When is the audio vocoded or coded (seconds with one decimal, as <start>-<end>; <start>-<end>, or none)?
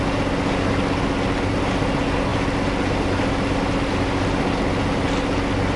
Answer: none